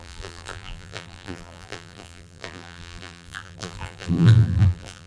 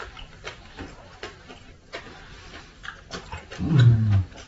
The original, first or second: second